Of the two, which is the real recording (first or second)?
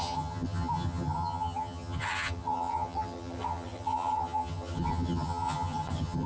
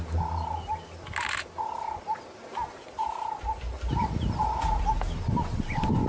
second